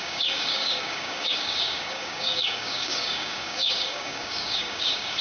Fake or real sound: fake